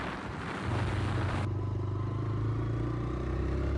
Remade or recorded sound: recorded